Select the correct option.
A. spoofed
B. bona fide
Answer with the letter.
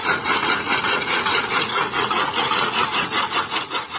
A